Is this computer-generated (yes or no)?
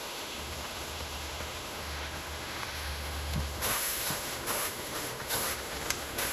yes